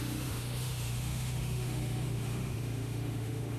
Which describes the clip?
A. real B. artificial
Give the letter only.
B